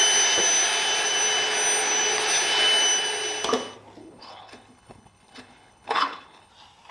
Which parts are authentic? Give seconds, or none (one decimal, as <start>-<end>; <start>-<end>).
0.0-4.0; 6.5-6.9